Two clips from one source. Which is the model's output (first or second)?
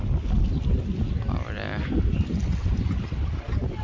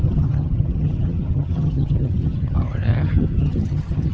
second